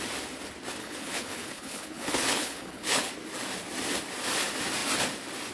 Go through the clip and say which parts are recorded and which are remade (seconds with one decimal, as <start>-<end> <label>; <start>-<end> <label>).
0.0-0.8 recorded; 0.8-3.1 remade; 3.1-5.5 recorded